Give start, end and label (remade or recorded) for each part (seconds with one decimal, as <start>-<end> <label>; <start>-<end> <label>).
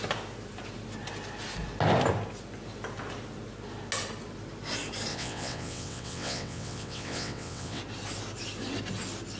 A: 0.0-5.1 recorded; 5.1-7.8 remade; 7.8-9.4 recorded